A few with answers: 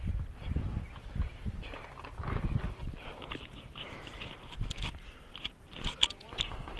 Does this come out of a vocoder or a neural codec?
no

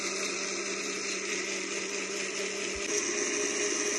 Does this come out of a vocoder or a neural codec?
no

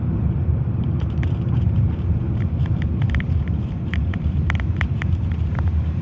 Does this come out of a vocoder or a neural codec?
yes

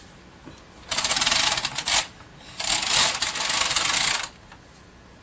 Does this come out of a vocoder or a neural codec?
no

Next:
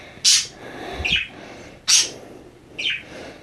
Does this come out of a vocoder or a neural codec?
no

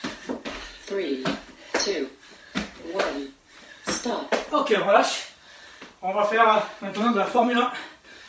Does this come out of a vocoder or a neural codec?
yes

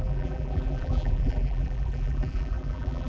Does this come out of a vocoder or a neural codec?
yes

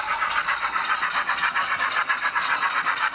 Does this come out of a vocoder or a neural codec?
no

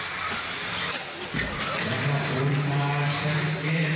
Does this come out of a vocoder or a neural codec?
no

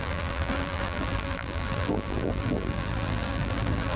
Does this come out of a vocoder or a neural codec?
yes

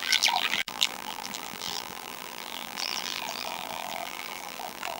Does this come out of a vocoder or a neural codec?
yes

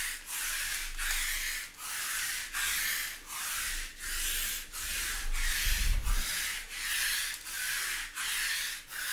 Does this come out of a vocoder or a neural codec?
no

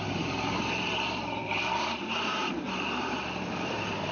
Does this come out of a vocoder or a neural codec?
yes